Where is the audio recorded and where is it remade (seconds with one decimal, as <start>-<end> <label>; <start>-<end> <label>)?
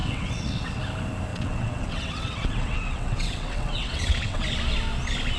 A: 0.0-0.8 remade; 0.8-1.3 recorded; 1.3-4.4 remade; 4.4-5.4 recorded